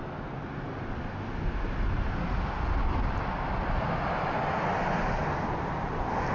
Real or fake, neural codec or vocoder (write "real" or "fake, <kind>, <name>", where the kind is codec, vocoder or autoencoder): real